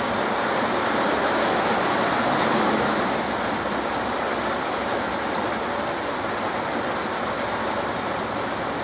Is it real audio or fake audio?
real